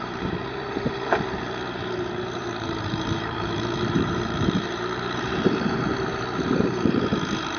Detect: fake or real fake